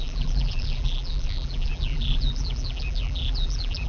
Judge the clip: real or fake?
fake